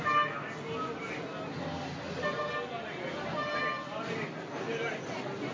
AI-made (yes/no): no